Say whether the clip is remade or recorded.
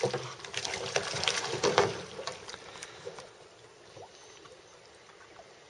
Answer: recorded